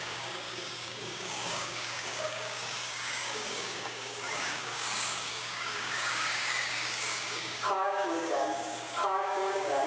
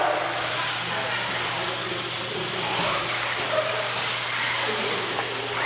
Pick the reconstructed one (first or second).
first